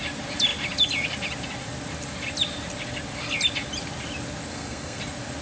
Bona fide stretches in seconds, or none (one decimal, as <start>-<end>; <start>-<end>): 0.0-4.5; 5.0-5.4